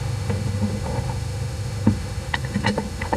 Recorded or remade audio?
remade